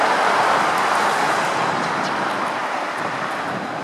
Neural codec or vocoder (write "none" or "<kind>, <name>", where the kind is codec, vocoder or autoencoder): vocoder, BigVGAN v2